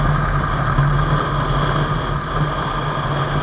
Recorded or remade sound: recorded